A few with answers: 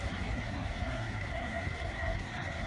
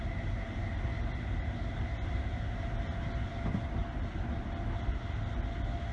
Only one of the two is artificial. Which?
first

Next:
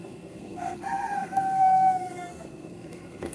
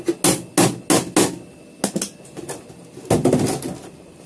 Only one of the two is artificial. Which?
first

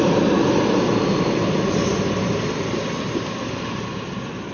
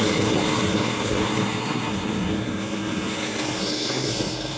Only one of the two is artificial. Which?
second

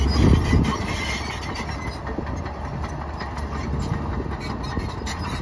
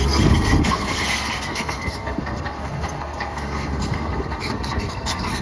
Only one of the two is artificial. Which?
second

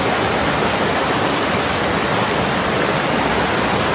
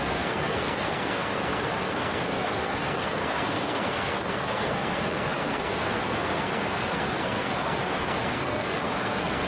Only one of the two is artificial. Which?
second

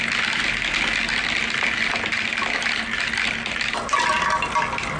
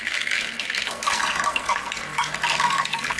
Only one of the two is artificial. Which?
second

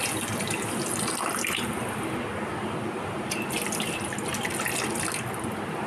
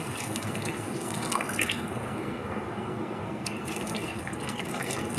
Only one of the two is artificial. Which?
second